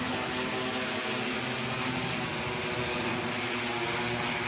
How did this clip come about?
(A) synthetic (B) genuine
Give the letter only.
B